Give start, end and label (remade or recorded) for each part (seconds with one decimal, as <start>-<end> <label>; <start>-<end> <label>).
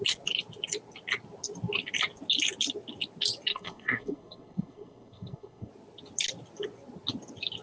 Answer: 0.0-3.5 recorded; 3.5-5.7 remade; 5.7-7.6 recorded